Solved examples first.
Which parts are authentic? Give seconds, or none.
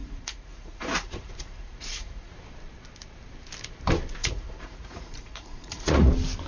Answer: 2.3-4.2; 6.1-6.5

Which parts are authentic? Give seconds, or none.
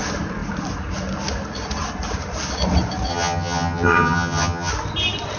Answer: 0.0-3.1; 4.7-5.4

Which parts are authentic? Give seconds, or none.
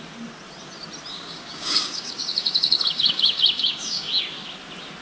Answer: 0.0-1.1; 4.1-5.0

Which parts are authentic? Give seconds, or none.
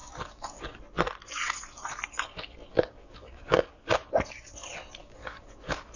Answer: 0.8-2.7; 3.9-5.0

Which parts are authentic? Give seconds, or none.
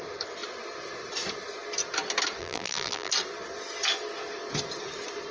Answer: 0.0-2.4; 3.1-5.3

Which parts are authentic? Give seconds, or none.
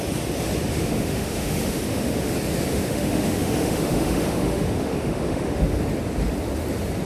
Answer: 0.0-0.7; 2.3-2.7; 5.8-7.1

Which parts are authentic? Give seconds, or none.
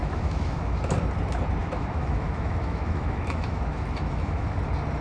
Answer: 0.8-1.6; 4.6-5.0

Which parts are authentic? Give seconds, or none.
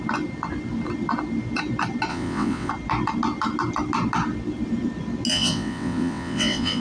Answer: 0.0-2.1; 2.7-5.3